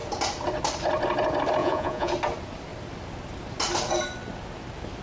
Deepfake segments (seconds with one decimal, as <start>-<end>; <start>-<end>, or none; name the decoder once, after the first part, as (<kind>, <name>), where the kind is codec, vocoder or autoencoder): 1.6-2.1 (vocoder, Vocos)